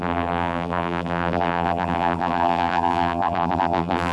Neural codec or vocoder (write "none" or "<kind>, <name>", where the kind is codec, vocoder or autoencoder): vocoder, BigVGAN v2